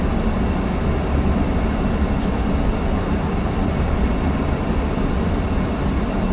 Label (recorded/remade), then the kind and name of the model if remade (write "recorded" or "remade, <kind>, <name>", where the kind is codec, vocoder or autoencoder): recorded